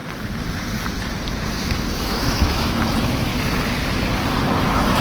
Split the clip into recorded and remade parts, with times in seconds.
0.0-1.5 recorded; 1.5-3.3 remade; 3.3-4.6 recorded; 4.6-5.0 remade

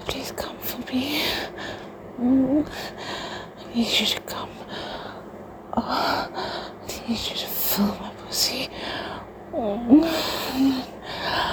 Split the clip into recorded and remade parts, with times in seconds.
0.0-4.9 recorded; 4.9-5.5 remade; 5.5-7.2 recorded; 7.2-8.0 remade; 8.0-10.0 recorded; 10.0-11.5 remade

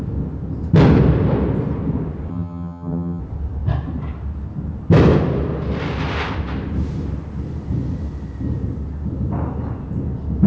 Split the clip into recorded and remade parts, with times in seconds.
0.0-2.3 recorded; 2.3-3.2 remade; 3.2-10.5 recorded

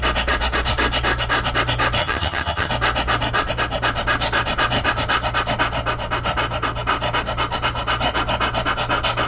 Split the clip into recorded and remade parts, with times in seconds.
0.0-2.0 recorded; 2.0-2.7 remade; 2.7-9.3 recorded

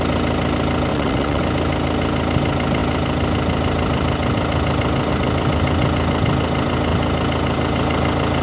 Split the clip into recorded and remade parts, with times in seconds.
0.0-0.9 recorded; 0.9-1.4 remade; 1.4-8.4 recorded

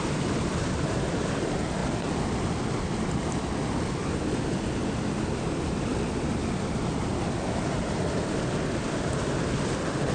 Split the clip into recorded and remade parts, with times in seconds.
0.0-1.8 remade; 1.8-6.7 recorded; 6.7-10.1 remade

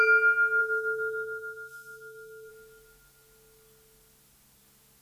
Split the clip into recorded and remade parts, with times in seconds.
0.0-0.6 recorded; 0.6-2.5 remade; 2.5-5.0 recorded

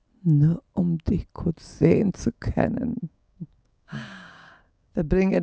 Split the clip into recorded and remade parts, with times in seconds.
0.0-1.7 recorded; 1.7-4.9 remade; 4.9-5.4 recorded